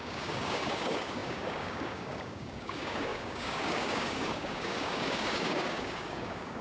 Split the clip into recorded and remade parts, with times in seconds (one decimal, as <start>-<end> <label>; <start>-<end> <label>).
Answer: 0.0-6.6 remade